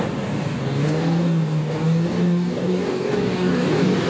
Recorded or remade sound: remade